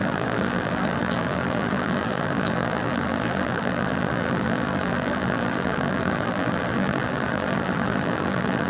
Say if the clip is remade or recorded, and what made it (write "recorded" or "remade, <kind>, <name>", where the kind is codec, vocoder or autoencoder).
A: remade, vocoder, BigVGAN v2